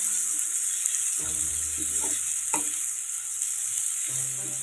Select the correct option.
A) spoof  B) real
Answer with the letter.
B